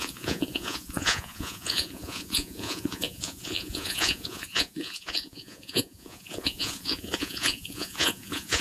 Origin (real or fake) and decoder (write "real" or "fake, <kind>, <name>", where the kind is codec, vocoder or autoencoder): fake, vocoder, Vocos